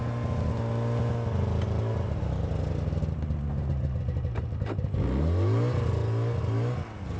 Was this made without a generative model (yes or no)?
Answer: yes